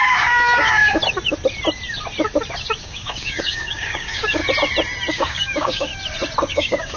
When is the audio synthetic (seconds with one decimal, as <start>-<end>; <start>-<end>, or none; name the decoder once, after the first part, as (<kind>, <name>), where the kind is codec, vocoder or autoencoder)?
0.0-1.0 (codec, DAC); 2.8-4.4; 5.1-5.9; 6.5-7.0